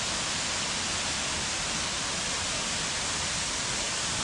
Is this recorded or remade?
recorded